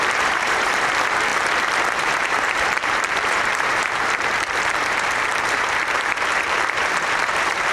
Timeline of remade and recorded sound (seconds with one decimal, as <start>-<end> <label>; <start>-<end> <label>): 0.0-1.3 remade; 1.3-2.0 recorded; 2.0-7.7 remade